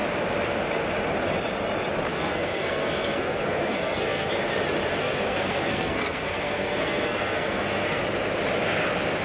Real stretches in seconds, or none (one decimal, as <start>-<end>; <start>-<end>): 0.0-2.1; 4.3-5.0; 8.0-9.2